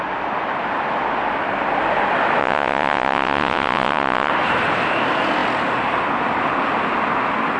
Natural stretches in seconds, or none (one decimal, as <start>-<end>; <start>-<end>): 0.0-2.4; 4.3-7.6

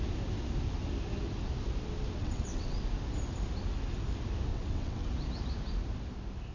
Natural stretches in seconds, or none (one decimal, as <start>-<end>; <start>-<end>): 0.0-2.2; 2.8-4.5; 5.1-6.5

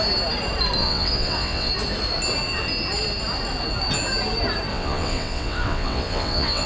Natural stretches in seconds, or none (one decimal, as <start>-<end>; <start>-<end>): 0.0-0.8; 1.7-4.7

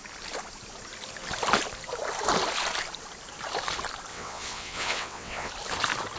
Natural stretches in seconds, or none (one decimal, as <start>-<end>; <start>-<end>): 0.0-4.1; 5.5-6.2

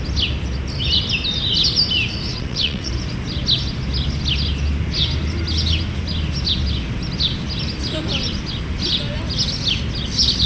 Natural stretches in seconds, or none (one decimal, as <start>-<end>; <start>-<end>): 0.0-2.3; 2.9-10.5

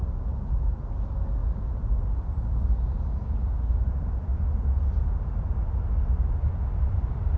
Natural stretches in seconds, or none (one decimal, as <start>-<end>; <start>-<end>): 0.0-7.4

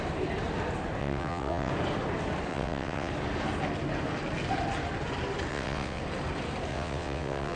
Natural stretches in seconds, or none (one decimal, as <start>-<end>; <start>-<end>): 0.0-1.0; 1.7-2.5; 3.1-5.5; 6.0-6.7